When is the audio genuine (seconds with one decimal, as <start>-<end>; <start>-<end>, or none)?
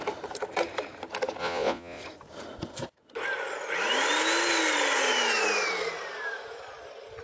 0.0-1.4; 2.0-7.2